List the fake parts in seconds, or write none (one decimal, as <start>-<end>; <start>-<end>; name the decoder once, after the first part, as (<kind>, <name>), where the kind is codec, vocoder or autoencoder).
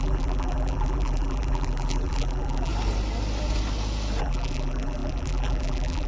0.0-2.7 (vocoder, BigVGAN v2); 4.2-6.1